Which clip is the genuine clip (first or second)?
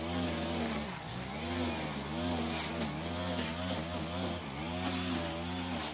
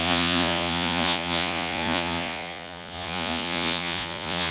first